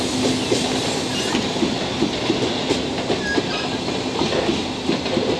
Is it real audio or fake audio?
real